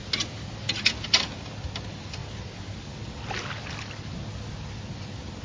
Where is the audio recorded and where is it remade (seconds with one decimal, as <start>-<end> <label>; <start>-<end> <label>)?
0.0-5.4 recorded